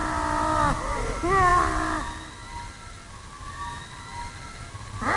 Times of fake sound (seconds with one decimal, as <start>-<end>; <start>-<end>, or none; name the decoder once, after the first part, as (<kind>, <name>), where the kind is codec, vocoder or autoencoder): none

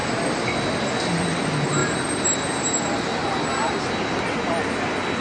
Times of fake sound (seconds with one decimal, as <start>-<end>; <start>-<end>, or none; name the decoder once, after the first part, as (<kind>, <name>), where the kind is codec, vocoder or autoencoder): 1.2-1.8 (vocoder, BigVGAN v2)